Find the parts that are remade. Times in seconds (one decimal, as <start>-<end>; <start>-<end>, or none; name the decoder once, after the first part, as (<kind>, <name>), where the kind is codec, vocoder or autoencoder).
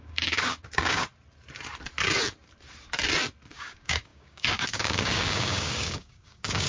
0.0-1.1 (codec, DAC); 3.5-6.7